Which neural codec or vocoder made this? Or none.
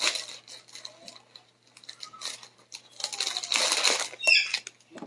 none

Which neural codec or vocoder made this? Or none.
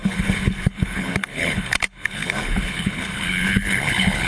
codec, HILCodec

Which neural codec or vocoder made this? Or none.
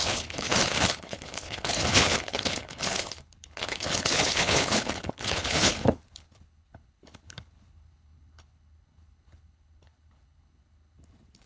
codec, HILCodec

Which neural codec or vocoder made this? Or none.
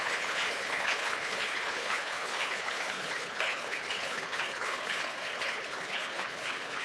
codec, HILCodec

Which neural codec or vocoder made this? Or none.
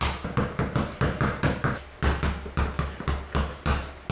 none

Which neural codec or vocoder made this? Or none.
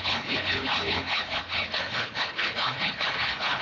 codec, HILCodec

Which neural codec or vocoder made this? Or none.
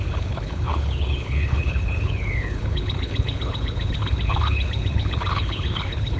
codec, HILCodec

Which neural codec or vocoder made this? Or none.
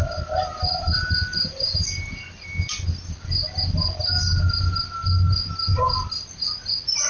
none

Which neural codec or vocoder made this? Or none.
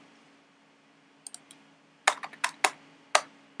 none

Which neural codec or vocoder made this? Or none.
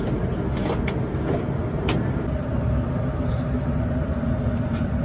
none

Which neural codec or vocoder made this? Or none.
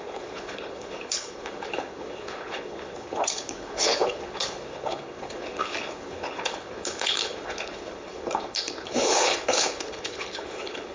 codec, HILCodec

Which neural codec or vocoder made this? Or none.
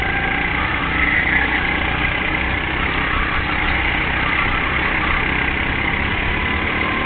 none